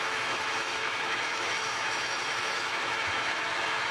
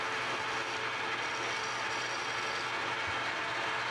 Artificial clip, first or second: first